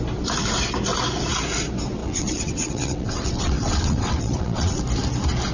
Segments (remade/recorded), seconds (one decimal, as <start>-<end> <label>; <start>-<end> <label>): 0.0-2.0 recorded; 2.0-4.8 remade; 4.8-5.5 recorded